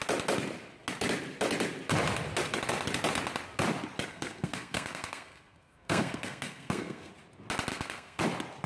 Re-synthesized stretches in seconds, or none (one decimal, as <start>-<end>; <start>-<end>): 4.1-7.1; 7.7-8.2